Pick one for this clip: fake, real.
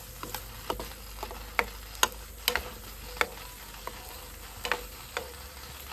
real